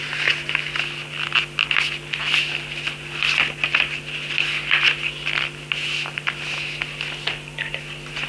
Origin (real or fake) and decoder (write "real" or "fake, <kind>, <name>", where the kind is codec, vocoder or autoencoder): real